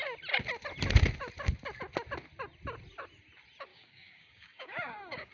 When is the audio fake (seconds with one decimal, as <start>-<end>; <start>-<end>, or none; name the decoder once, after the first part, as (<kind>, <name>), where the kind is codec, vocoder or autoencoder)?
3.7-5.3 (codec, DAC)